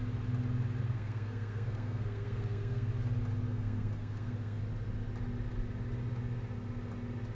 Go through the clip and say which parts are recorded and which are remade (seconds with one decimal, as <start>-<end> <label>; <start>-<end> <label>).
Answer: 0.0-0.8 recorded; 0.8-2.9 remade; 2.9-3.5 recorded; 3.5-4.6 remade; 4.6-7.3 recorded